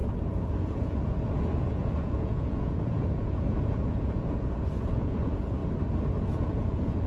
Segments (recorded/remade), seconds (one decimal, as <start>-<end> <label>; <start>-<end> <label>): 0.0-5.6 remade; 5.6-6.2 recorded; 6.2-7.1 remade